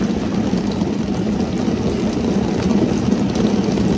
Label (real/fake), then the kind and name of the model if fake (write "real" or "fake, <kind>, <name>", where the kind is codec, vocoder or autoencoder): fake, vocoder, BigVGAN v2